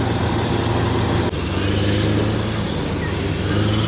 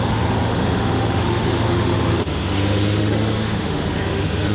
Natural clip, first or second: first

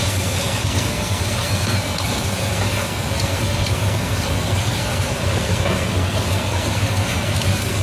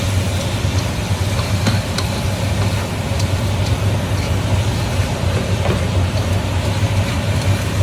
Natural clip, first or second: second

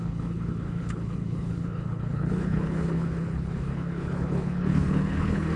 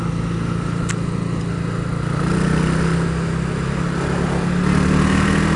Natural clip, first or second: second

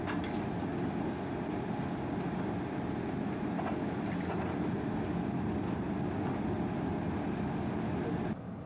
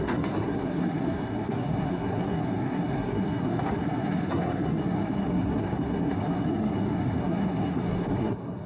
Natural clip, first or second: first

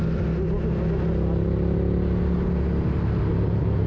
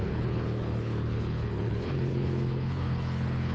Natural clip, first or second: first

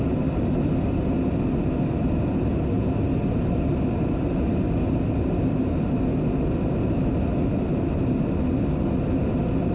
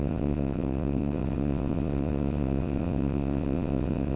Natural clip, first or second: first